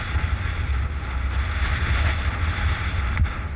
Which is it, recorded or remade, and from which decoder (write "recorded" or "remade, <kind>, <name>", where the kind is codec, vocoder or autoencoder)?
recorded